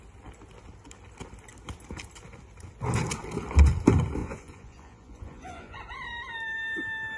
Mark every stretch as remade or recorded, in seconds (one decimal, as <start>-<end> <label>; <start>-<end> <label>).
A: 0.0-4.2 recorded; 4.2-5.8 remade; 5.8-7.2 recorded